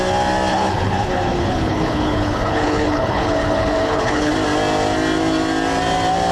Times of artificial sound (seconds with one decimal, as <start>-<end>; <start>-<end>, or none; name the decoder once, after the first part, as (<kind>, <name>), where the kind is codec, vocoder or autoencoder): 0.5-4.3 (codec, HILCodec)